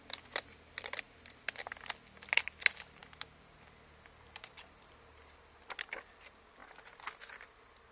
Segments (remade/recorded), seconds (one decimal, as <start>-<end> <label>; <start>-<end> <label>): 0.0-7.9 recorded

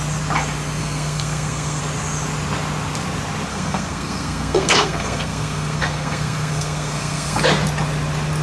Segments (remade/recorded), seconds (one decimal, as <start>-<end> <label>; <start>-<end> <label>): 0.0-0.8 recorded; 0.8-1.8 remade; 1.8-3.5 recorded; 3.5-7.4 remade; 7.4-8.4 recorded

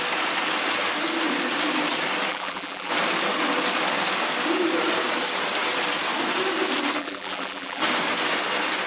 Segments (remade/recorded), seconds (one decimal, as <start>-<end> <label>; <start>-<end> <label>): 0.0-2.3 recorded; 2.3-2.9 remade; 2.9-7.0 recorded; 7.0-7.8 remade; 7.8-8.9 recorded